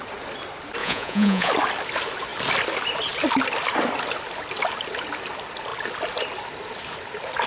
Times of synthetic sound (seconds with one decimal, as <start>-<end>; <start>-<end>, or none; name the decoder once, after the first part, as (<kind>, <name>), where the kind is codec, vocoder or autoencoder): 0.8-1.5 (vocoder, Vocos)

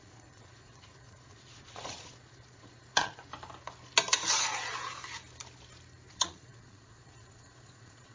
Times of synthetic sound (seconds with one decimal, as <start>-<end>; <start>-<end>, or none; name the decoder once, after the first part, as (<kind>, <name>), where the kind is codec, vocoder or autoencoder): 0.0-3.3 (vocoder, Vocos); 6.1-8.1

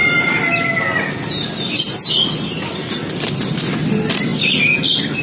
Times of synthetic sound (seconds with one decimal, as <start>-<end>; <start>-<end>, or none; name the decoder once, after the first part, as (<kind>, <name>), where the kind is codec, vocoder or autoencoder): none

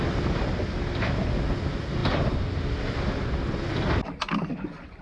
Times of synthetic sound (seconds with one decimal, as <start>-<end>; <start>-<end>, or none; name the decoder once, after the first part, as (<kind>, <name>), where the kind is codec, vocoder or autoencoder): none

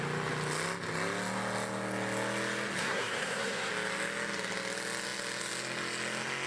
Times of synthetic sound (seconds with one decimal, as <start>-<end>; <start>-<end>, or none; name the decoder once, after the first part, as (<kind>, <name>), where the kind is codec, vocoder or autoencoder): 2.8-3.7 (codec, SNAC)

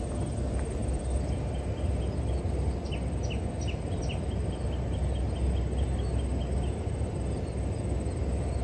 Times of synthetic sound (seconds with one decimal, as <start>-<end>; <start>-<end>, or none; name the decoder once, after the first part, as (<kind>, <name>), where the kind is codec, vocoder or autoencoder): none

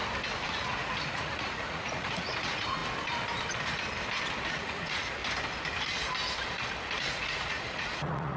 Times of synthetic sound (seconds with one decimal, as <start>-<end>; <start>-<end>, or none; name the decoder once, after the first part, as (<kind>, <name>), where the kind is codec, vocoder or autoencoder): 0.5-2.8 (vocoder, Vocos); 4.5-5.2; 7.0-8.4